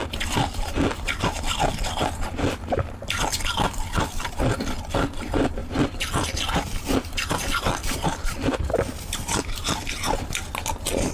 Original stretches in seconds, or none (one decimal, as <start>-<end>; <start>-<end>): 0.0-11.1

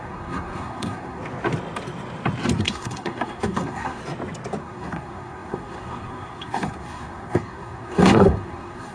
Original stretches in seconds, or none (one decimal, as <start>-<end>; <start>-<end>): 1.2-2.6; 4.0-4.6

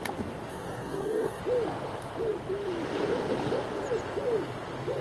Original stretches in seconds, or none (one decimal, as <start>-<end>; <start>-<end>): 0.0-0.5; 1.4-5.0

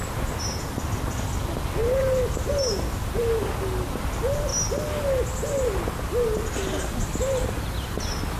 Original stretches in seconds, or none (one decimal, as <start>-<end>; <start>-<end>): 0.0-8.4

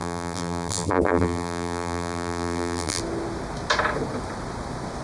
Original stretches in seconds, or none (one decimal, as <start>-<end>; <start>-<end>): 3.0-5.0

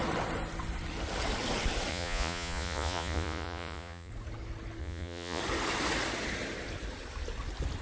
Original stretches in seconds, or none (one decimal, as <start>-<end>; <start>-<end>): 0.0-1.9; 4.1-4.8; 5.4-7.8